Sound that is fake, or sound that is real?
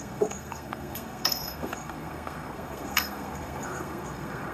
fake